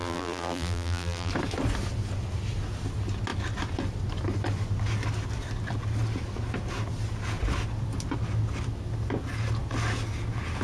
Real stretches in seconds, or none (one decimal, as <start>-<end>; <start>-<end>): 1.3-10.6